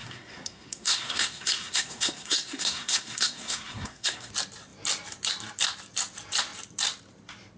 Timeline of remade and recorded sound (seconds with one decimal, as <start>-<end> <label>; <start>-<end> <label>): 0.0-4.3 remade; 4.3-7.6 recorded